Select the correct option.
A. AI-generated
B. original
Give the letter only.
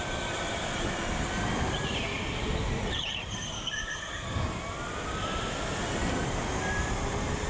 B